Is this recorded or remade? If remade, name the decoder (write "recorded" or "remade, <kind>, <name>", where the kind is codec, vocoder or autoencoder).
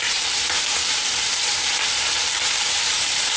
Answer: remade, vocoder, BigVGAN v2